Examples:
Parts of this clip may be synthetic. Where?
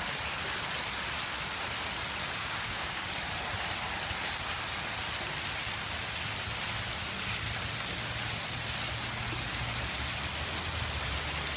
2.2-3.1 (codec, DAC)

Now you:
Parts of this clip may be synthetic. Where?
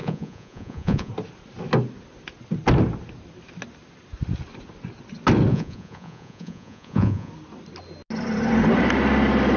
0.0-1.1 (vocoder, Vocos); 5.5-7.3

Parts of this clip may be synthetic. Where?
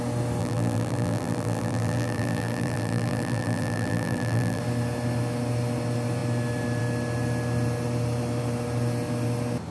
0.4-4.6 (vocoder, BigVGAN v2)